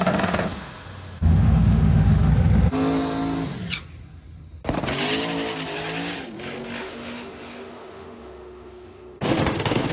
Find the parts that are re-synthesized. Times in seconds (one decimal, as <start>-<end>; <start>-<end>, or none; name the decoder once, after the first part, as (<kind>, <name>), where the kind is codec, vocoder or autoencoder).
0.0-2.3 (autoencoder, DAC-VAE); 6.8-9.9